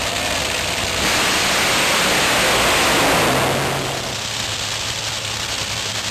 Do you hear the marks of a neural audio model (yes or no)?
no